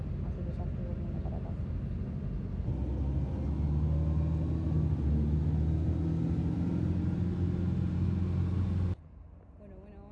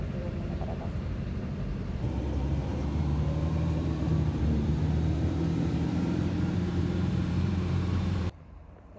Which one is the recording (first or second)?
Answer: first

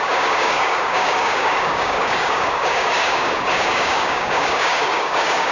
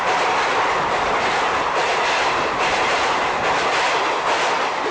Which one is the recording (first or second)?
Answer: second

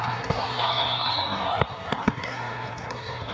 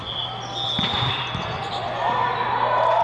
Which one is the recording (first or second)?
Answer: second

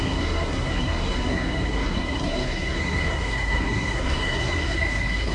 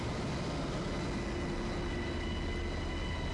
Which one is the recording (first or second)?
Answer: second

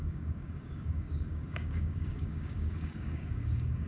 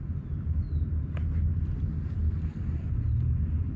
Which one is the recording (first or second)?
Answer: second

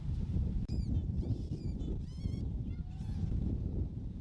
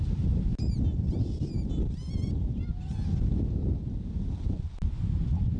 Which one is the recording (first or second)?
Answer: second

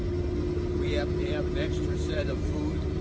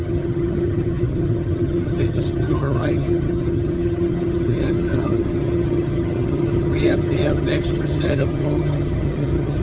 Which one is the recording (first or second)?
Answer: first